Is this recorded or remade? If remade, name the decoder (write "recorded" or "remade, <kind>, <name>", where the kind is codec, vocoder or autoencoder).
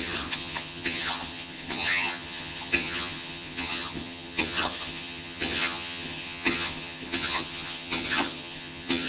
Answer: remade, vocoder, HiFi-GAN